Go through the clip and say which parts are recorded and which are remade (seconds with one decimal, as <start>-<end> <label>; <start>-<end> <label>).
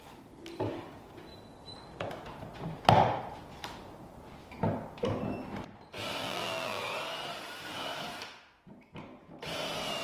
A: 0.0-6.2 recorded; 6.2-6.8 remade; 6.8-10.0 recorded